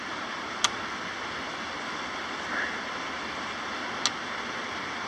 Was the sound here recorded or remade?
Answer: recorded